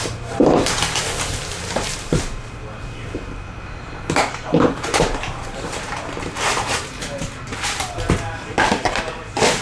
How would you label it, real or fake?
fake